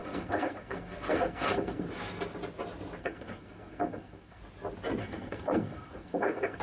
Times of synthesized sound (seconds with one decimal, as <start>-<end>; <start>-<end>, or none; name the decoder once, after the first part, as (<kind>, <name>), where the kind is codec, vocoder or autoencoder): 0.0-1.9 (codec, SNAC); 3.0-4.4; 5.0-6.6